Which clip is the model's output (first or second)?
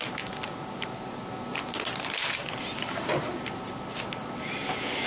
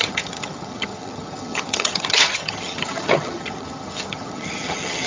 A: second